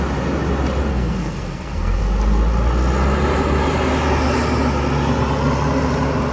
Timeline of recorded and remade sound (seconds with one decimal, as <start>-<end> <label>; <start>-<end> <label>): 0.0-0.9 recorded; 0.9-2.0 remade; 2.0-6.3 recorded